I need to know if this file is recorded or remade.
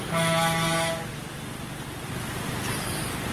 recorded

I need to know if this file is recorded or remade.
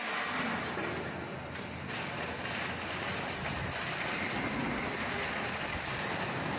recorded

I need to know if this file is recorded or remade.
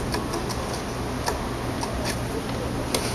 recorded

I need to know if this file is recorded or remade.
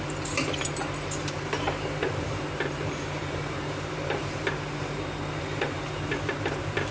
remade